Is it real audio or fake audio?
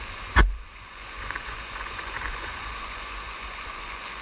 fake